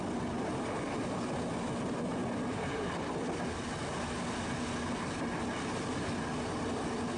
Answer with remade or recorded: recorded